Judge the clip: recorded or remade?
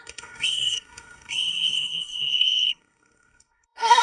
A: remade